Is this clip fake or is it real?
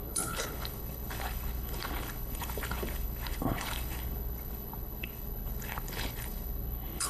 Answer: fake